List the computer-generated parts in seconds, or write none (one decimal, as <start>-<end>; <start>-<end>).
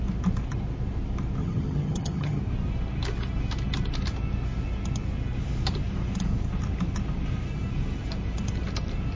1.4-2.4